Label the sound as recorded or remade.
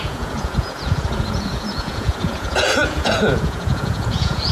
remade